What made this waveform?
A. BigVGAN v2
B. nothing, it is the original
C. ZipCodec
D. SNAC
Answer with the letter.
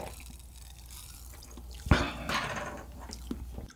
A